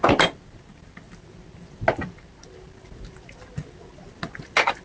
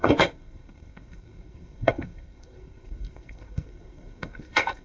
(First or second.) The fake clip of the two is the second